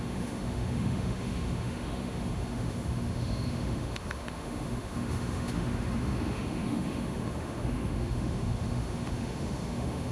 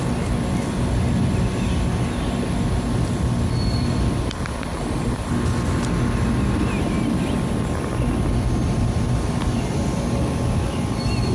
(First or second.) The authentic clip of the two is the second